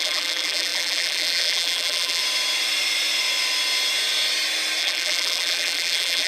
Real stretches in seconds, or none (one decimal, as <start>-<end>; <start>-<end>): 2.2-4.8